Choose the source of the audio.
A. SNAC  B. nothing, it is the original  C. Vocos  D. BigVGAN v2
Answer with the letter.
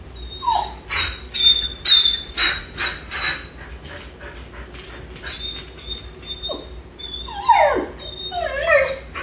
B